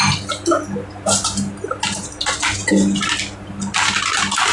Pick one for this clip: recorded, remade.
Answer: recorded